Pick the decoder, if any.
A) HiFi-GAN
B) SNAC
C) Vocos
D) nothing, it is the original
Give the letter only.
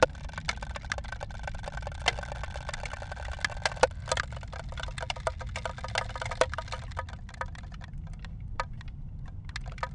D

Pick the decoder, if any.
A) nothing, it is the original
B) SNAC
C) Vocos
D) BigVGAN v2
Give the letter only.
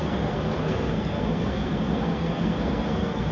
B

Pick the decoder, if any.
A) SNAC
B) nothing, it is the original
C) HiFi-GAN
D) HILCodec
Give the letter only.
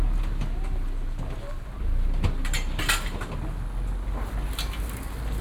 B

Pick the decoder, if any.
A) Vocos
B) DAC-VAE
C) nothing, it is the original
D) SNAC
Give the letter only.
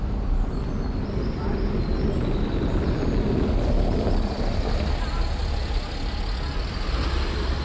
C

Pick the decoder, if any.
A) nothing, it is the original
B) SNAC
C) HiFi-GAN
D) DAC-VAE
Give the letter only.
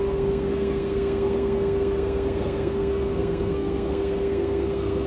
B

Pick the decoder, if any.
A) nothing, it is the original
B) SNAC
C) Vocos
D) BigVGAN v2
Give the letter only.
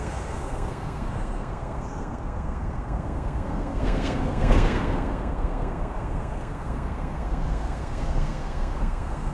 B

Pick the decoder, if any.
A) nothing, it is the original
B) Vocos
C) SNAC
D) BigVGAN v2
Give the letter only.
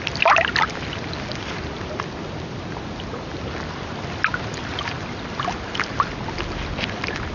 A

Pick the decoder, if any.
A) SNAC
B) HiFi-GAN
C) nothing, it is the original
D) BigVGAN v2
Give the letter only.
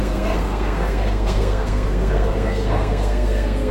A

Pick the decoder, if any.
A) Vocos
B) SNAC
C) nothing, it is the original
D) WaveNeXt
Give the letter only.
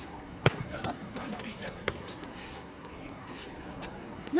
B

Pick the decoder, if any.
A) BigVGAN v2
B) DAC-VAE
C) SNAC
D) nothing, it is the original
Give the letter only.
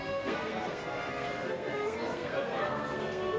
C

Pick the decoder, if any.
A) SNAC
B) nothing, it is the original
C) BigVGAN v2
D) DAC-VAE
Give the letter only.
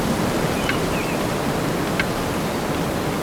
B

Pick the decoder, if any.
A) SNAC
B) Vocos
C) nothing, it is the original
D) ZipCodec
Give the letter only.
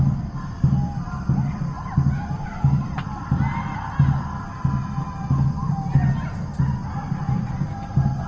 C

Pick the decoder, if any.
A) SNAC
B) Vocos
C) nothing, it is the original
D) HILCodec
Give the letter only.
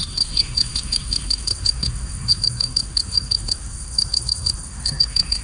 A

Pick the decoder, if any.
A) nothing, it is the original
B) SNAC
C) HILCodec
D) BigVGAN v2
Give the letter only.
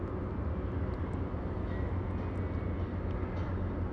A